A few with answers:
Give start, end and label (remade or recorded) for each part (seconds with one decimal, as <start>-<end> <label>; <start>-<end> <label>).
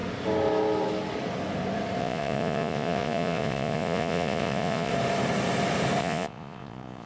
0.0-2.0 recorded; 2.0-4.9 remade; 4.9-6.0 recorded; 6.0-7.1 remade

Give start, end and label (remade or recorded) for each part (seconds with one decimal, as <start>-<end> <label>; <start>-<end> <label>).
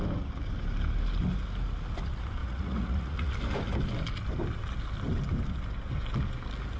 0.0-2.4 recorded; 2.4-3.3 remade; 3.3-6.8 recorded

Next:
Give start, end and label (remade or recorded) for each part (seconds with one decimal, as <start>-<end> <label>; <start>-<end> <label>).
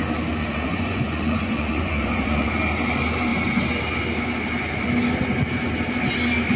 0.0-0.4 recorded; 0.4-2.5 remade; 2.5-6.6 recorded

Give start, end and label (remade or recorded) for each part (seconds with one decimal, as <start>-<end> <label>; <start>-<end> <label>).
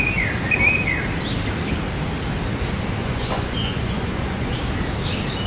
0.0-3.0 recorded; 3.0-4.6 remade; 4.6-5.5 recorded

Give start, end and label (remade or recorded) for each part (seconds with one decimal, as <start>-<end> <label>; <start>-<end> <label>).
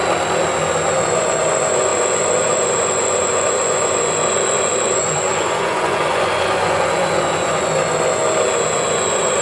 0.0-0.9 recorded; 0.9-8.2 remade; 8.2-8.7 recorded; 8.7-9.4 remade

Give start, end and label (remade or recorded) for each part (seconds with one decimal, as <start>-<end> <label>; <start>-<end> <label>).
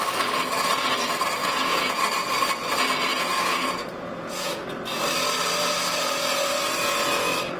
0.0-1.4 recorded; 1.4-2.0 remade; 2.0-3.1 recorded; 3.1-4.5 remade; 4.5-7.6 recorded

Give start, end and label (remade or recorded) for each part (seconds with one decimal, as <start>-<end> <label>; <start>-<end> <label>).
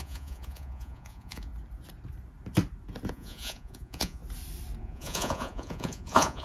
0.0-1.5 remade; 1.5-3.1 recorded; 3.1-4.2 remade; 4.2-4.8 recorded; 4.8-6.4 remade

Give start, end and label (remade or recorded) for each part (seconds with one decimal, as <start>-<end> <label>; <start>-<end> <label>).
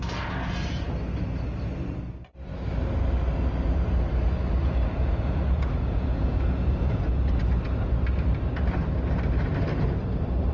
0.0-4.6 recorded; 4.6-7.4 remade; 7.4-10.5 recorded